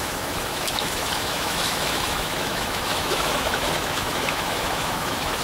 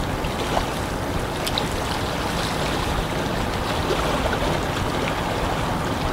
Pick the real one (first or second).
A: second